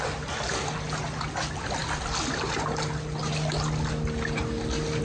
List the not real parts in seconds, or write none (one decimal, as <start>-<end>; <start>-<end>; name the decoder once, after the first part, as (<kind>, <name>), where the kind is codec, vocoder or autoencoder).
none